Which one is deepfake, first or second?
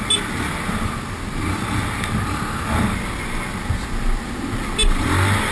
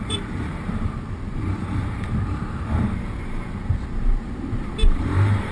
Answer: second